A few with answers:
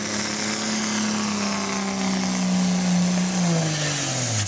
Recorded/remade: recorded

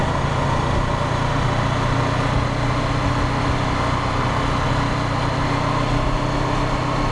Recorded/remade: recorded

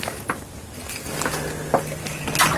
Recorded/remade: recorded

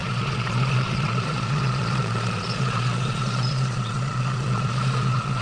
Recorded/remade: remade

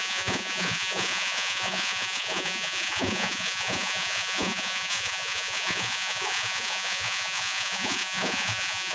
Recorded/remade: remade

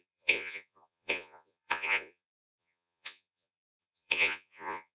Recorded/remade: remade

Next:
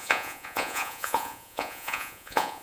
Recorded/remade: remade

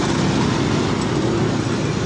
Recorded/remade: recorded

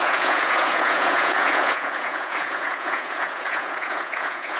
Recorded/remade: remade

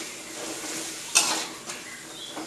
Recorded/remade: recorded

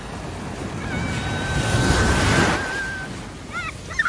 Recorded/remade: recorded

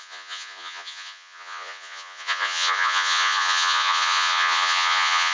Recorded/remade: remade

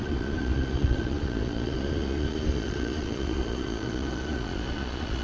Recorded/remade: remade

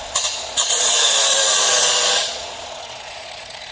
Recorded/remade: remade